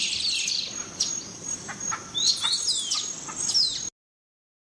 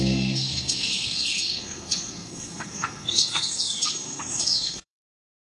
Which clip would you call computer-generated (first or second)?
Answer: second